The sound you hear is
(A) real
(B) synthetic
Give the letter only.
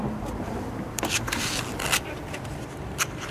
B